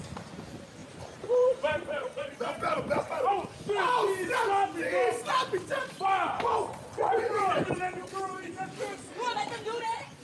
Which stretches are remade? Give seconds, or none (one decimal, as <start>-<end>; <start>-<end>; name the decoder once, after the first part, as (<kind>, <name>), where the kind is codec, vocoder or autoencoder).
0.8-2.3 (vocoder, BigVGAN v2)